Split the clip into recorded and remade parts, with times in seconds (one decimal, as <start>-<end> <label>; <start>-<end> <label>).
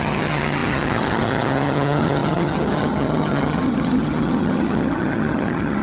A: 0.0-5.8 remade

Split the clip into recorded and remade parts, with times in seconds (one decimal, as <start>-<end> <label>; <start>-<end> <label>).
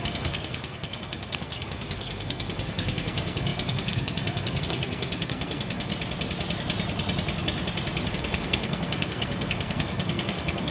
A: 0.0-5.9 remade; 5.9-8.1 recorded; 8.1-10.7 remade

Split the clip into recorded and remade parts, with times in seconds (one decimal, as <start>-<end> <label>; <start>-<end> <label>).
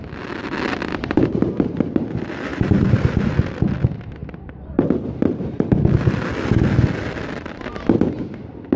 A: 0.0-0.9 recorded; 0.9-1.8 remade; 1.8-2.5 recorded; 2.5-3.1 remade; 3.1-8.8 recorded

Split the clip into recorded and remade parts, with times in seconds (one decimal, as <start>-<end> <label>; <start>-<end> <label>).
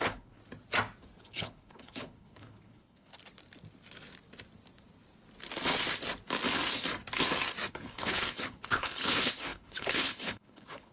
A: 0.0-0.4 remade; 0.4-1.2 recorded; 1.2-3.1 remade; 3.1-7.7 recorded; 7.7-10.9 remade